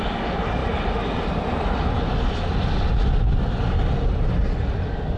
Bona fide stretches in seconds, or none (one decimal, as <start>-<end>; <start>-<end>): 0.0-5.2